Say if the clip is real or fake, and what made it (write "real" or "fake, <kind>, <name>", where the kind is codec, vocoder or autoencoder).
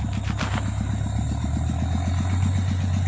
real